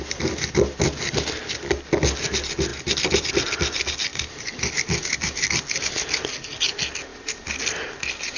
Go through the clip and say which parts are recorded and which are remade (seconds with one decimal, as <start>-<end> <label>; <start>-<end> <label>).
0.0-4.1 recorded; 4.1-4.7 remade; 4.7-8.4 recorded